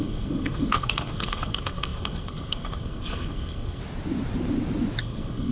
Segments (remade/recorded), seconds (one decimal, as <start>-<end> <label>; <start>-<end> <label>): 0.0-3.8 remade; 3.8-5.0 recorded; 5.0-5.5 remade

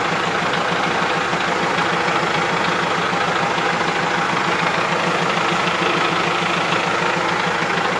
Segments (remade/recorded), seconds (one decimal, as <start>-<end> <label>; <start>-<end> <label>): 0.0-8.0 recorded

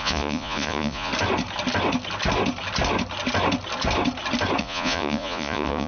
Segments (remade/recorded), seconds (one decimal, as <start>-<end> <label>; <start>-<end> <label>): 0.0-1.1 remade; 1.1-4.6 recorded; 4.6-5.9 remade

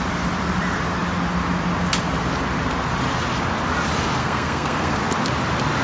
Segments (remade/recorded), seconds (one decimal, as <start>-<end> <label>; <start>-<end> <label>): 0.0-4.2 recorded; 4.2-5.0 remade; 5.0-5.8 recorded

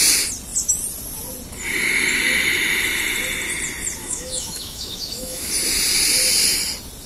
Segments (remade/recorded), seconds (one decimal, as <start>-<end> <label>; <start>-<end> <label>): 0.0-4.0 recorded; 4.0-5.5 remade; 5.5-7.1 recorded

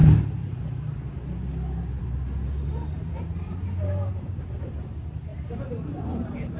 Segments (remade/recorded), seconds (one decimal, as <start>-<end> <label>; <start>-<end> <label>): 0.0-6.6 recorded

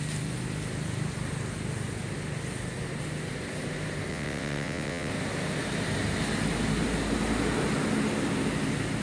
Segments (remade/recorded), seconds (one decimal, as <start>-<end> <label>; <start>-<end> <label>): 0.0-4.1 recorded; 4.1-5.1 remade; 5.1-9.0 recorded